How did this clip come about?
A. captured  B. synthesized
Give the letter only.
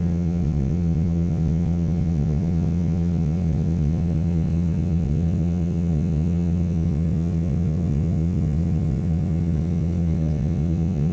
B